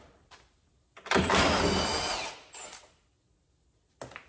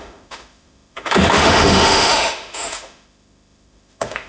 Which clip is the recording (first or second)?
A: first